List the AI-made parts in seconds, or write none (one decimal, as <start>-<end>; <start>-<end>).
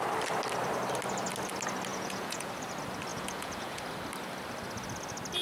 1.9-2.5; 3.1-3.8